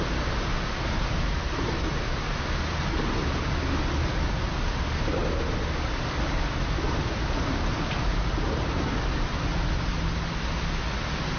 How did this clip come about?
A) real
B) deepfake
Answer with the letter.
A